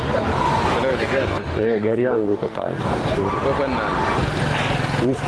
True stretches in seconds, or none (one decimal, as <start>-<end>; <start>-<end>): 0.0-0.9; 3.2-5.3